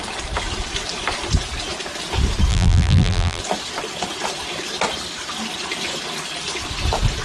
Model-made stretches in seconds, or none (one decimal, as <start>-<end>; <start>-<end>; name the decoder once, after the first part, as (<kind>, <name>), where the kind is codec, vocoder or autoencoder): 2.5-3.4 (vocoder, BigVGAN v2)